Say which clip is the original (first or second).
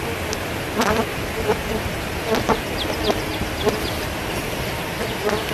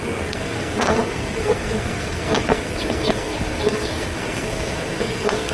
first